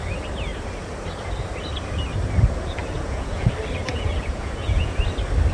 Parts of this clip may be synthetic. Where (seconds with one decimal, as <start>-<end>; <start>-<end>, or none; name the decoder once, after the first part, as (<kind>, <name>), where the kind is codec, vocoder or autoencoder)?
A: 2.8-3.5 (vocoder, Vocos); 3.9-5.0